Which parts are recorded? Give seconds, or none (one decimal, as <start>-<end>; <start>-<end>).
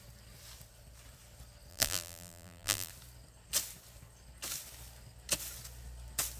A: 0.0-1.7; 2.9-6.4